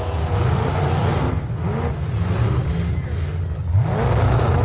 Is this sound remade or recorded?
recorded